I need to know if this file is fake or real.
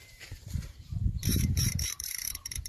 fake